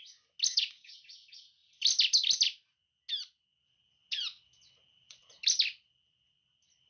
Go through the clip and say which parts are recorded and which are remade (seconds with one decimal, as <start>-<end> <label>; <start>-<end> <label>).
0.0-0.5 recorded; 0.5-1.0 remade; 1.0-6.9 recorded